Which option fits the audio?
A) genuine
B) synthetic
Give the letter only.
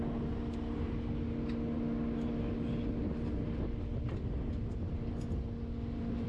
A